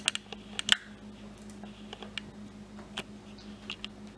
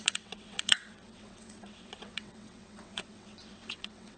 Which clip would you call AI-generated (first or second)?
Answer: second